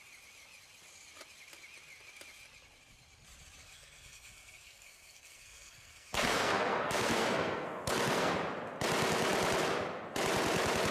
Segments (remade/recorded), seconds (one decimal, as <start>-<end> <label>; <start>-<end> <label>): 0.0-3.6 recorded; 3.6-8.3 remade; 8.3-10.9 recorded